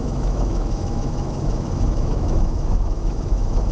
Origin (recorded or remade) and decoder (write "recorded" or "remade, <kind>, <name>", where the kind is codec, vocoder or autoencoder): remade, autoencoder, DAC-VAE